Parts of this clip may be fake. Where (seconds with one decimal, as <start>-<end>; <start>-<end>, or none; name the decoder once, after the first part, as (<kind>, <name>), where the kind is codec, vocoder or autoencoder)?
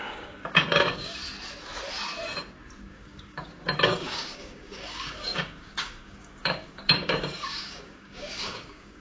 0.0-1.2 (codec, DAC); 2.8-9.0